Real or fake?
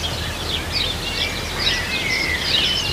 real